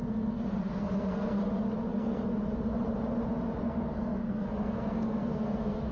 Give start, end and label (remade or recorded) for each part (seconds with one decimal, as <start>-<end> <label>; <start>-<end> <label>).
0.0-1.4 remade; 1.4-1.9 recorded; 1.9-2.3 remade; 2.3-3.6 recorded; 3.6-5.9 remade

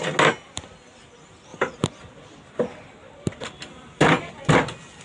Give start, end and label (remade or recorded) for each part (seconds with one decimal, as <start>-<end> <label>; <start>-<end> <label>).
0.0-5.0 recorded

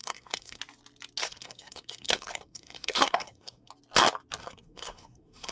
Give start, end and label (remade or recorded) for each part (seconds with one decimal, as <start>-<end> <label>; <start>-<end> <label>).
0.0-0.6 remade; 0.6-1.2 recorded; 1.2-3.7 remade; 3.7-4.4 recorded; 4.4-5.5 remade

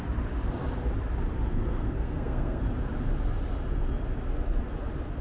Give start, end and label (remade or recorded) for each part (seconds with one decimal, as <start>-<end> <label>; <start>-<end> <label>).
0.0-1.5 recorded; 1.5-2.6 remade; 2.6-5.2 recorded

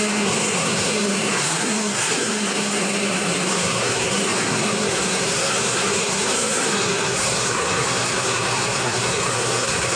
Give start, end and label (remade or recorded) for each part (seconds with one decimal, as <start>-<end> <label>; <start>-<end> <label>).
0.0-10.0 remade